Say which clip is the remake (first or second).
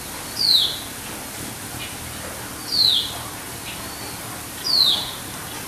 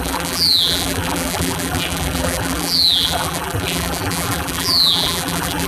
second